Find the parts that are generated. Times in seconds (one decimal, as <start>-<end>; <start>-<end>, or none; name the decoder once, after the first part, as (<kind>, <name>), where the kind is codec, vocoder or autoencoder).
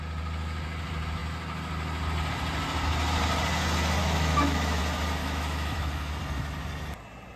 4.0-4.8 (autoencoder, DAC-VAE); 5.2-6.1